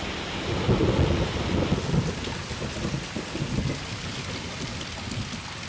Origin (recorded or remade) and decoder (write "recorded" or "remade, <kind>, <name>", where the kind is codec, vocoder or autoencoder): recorded